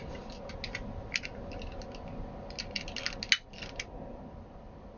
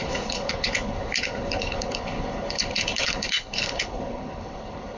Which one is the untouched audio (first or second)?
first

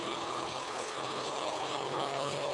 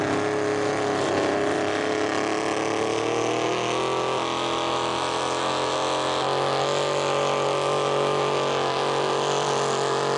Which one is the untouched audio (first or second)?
second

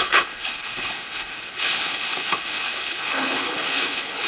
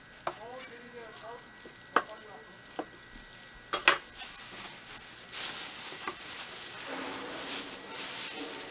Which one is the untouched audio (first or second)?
second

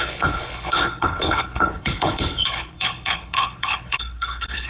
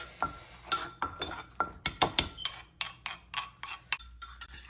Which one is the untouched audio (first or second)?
second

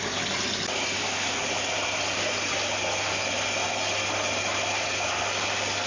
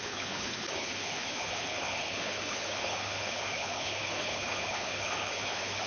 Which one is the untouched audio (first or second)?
first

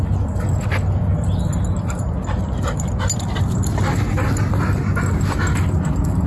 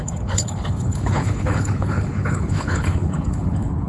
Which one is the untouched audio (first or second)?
first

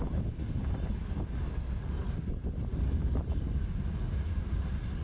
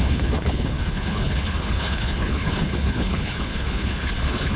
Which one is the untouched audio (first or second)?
first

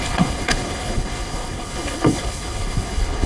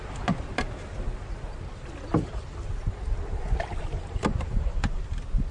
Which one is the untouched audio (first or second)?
second